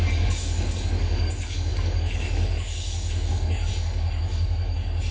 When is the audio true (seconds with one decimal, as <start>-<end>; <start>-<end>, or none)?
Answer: none